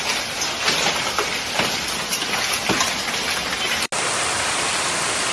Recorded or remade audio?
recorded